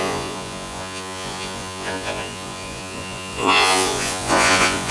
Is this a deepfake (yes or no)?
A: yes